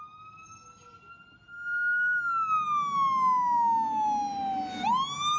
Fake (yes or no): no